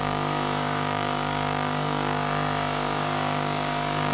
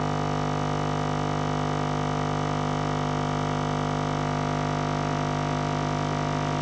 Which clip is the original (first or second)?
second